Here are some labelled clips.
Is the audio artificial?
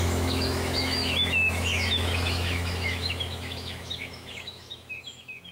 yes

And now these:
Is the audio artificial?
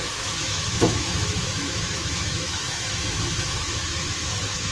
yes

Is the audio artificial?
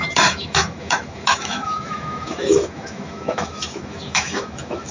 yes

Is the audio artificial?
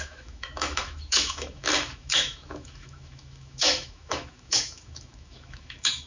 yes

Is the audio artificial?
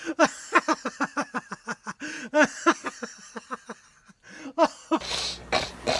no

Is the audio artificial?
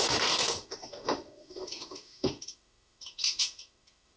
yes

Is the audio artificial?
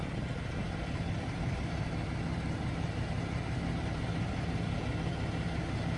no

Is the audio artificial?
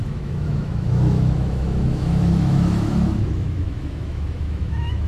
yes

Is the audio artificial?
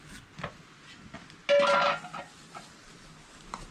no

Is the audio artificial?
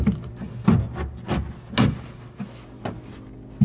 no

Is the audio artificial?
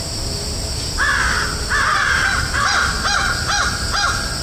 no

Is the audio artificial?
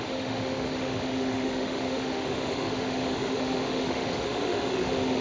yes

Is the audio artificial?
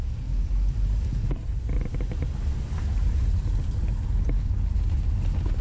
no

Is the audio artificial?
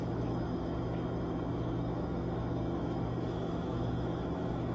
yes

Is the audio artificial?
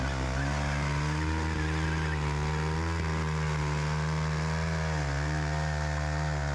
no